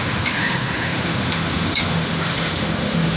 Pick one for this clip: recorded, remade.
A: remade